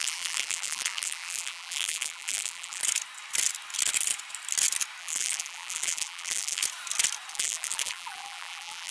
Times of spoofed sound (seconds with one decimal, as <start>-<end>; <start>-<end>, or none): 0.0-2.8; 5.0-6.6; 7.3-8.9